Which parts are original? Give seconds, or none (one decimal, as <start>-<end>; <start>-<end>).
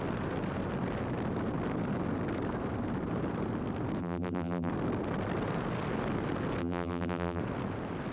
0.0-4.0; 4.7-6.6; 7.4-8.1